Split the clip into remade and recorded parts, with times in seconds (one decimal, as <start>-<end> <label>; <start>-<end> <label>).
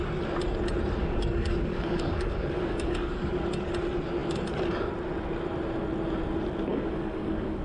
0.0-1.0 recorded; 1.0-3.4 remade; 3.4-6.7 recorded; 6.7-7.6 remade